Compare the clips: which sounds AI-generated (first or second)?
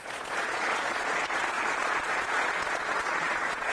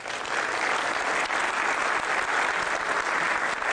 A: first